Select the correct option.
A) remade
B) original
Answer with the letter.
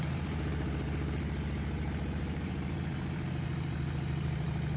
A